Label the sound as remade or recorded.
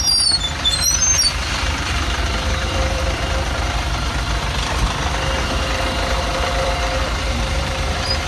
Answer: remade